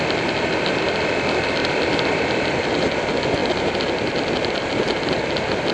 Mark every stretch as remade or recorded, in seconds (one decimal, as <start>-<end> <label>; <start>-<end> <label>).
0.0-5.7 recorded